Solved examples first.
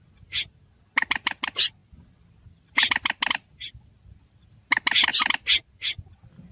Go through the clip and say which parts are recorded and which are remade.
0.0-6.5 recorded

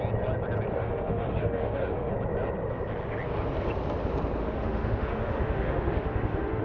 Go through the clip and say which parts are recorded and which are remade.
0.0-0.7 recorded; 0.7-2.1 remade; 2.1-4.4 recorded; 4.4-6.6 remade

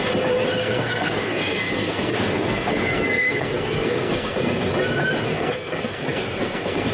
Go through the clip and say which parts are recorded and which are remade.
0.0-0.6 recorded; 0.6-4.7 remade; 4.7-5.3 recorded; 5.3-6.9 remade

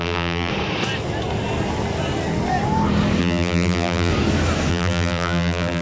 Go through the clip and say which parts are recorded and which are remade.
0.0-0.5 remade; 0.5-3.2 recorded; 3.2-4.1 remade; 4.1-4.7 recorded; 4.7-5.8 remade

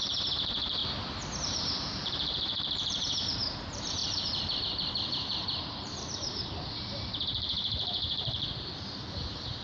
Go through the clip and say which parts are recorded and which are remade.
0.0-0.8 remade; 0.8-1.4 recorded; 1.4-9.6 remade